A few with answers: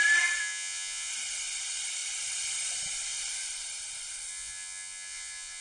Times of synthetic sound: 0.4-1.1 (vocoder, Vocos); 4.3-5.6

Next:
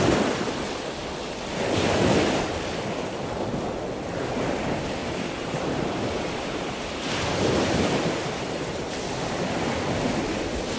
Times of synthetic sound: 5.0-9.3 (vocoder, BigVGAN v2)

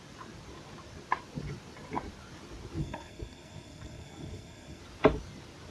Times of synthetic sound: 2.8-4.8 (codec, SNAC)

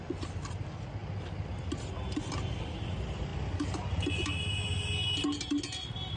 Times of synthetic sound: none

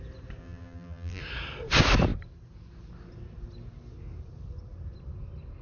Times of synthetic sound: 0.4-1.2 (vocoder, BigVGAN v2)